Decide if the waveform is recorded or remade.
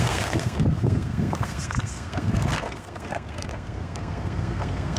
remade